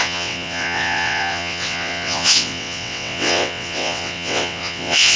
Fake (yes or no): yes